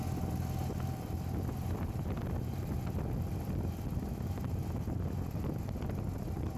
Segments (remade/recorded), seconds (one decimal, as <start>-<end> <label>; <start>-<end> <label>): 0.0-0.6 recorded; 0.6-4.6 remade; 4.6-6.6 recorded